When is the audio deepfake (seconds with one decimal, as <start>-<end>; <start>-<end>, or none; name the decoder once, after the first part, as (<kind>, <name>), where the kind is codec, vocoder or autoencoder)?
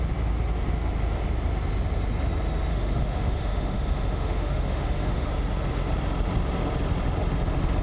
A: 2.7-5.3 (autoencoder, DAC-VAE)